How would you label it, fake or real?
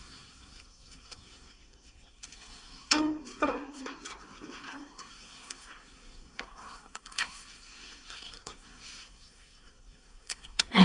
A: fake